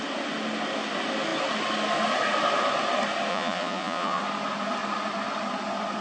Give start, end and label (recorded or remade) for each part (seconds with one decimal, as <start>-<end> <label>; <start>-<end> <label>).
0.0-3.3 recorded; 3.3-4.2 remade; 4.2-6.0 recorded